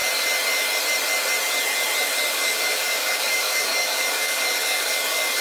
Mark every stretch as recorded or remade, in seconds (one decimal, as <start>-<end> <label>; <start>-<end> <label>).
0.0-2.3 recorded; 2.3-5.4 remade